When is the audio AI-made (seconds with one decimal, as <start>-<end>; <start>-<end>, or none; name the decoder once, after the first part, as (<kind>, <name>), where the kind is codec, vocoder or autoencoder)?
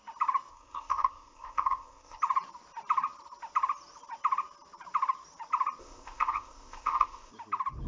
0.5-2.2 (codec, ZipCodec); 5.8-7.3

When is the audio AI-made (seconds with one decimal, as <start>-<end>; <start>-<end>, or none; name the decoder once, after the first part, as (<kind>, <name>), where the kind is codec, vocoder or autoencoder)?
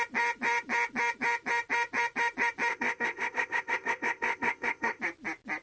2.7-5.0 (codec, ZipCodec)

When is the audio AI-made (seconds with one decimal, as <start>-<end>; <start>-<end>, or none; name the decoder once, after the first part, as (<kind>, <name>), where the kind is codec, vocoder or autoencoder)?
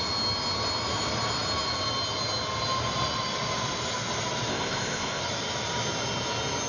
4.5-5.2 (codec, ZipCodec)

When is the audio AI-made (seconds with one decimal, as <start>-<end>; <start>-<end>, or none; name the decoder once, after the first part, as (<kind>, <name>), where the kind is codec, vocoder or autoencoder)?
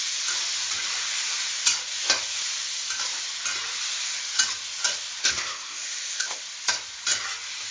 5.2-6.4 (codec, ZipCodec)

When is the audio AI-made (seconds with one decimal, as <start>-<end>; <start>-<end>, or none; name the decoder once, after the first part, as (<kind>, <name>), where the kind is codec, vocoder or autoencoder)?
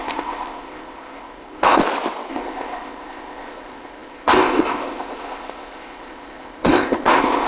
0.0-1.8 (codec, ZipCodec); 2.3-7.5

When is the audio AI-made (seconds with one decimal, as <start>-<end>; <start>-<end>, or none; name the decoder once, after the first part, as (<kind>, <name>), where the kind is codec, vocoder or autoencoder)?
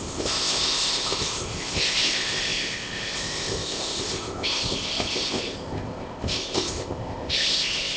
0.0-8.0 (codec, ZipCodec)